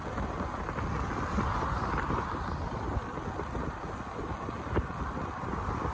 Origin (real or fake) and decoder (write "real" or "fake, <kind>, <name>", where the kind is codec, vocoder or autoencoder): real